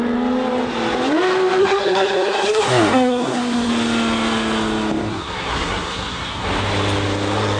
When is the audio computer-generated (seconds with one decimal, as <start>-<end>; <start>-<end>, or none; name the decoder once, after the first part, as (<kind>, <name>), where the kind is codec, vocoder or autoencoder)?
1.6-3.7 (codec, SNAC); 5.1-6.5